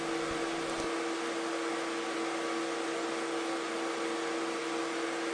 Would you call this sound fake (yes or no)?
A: no